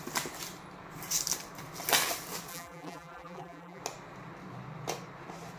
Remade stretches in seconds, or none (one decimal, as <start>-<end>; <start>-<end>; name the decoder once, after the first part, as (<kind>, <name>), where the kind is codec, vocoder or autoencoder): 2.5-3.8 (vocoder, BigVGAN v2)